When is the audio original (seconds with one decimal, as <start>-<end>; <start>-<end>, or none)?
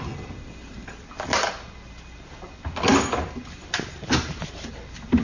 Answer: 0.0-5.2